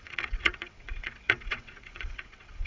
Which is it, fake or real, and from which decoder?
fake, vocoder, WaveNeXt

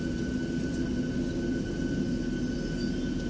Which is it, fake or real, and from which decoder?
real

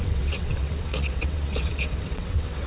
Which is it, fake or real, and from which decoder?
fake, vocoder, WaveNeXt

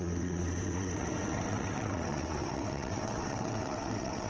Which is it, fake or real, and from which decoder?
fake, vocoder, WaveNeXt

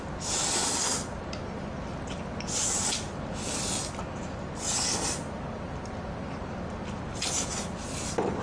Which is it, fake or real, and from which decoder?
real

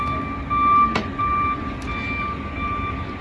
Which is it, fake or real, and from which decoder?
real